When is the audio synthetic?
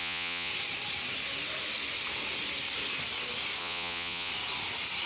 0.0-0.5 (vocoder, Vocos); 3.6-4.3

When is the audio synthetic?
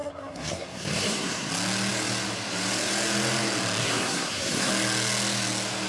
0.0-1.5 (codec, SNAC); 3.8-4.7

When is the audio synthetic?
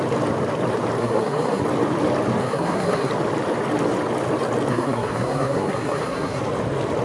1.0-1.6 (codec, SNAC); 2.4-3.1; 4.7-6.4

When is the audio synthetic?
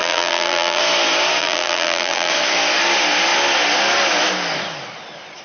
0.0-0.8 (vocoder, BigVGAN v2); 1.4-2.3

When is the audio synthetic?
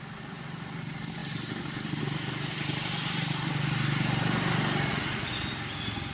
4.9-5.4 (vocoder, Vocos)